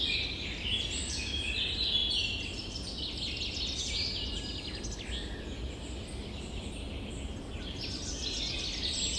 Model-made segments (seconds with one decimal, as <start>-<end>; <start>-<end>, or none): none